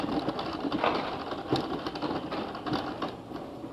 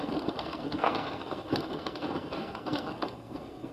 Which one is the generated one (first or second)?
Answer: second